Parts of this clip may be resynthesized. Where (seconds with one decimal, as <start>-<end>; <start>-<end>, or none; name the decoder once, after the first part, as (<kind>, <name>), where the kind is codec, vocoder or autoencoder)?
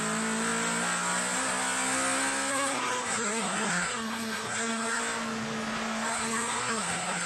2.5-5.0 (codec, SNAC); 6.1-7.3